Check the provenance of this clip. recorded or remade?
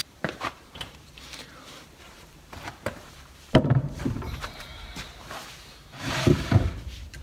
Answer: remade